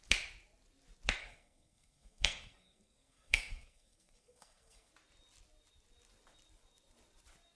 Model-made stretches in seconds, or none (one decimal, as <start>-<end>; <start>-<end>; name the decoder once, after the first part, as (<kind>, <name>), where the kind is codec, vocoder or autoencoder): 1.2-4.9 (codec, SNAC)